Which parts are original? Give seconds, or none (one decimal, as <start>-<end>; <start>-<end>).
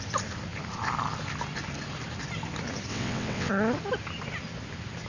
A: 0.0-2.9; 3.5-5.1